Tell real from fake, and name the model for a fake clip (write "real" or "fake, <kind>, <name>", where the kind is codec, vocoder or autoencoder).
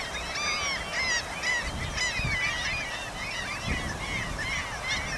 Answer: real